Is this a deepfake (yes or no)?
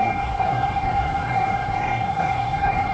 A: yes